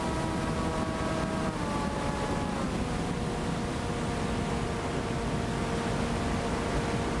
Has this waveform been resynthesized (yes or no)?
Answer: no